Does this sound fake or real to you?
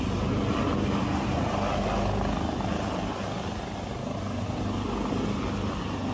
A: real